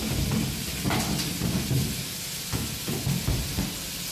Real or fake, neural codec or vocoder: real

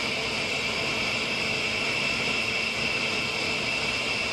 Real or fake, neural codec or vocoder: real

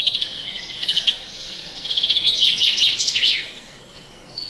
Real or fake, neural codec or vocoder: fake, codec, SNAC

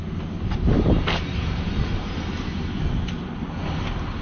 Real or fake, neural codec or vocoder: real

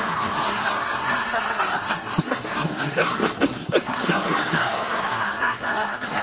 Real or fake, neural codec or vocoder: fake, codec, SNAC